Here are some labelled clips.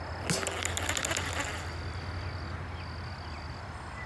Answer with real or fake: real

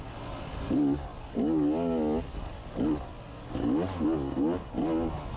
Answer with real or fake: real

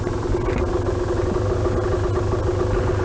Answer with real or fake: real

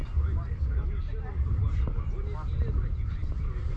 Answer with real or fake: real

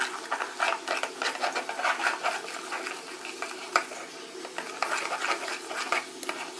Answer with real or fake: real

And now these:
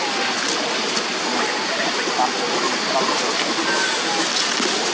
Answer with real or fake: real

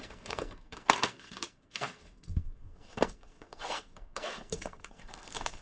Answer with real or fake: fake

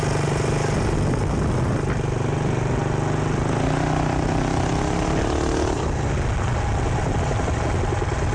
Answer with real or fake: real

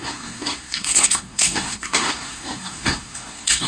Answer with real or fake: fake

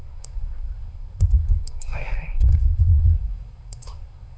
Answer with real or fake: fake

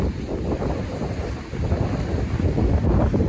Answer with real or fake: real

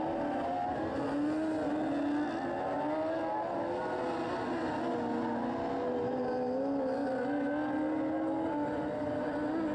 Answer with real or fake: real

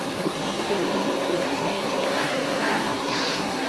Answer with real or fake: fake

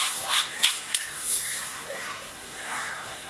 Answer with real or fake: fake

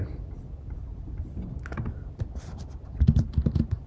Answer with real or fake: real